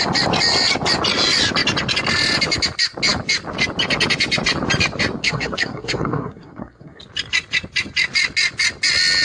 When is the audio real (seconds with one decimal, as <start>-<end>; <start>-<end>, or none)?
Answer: 0.0-5.2; 7.0-9.2